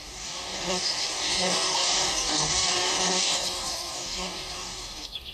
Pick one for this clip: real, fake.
fake